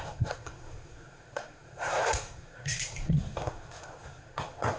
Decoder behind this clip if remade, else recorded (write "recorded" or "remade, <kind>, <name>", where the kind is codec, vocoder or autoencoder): remade, codec, SNAC